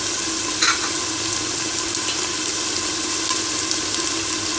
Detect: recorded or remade recorded